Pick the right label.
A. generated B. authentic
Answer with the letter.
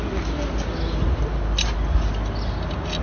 B